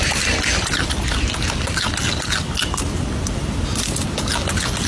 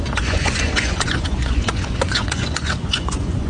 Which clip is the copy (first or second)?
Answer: second